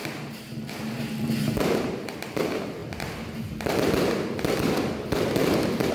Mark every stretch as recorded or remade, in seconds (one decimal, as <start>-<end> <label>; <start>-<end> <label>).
0.0-0.7 recorded; 0.7-2.8 remade; 2.8-5.9 recorded